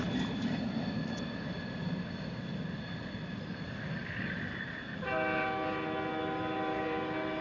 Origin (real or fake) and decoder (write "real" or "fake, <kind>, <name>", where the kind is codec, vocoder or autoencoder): real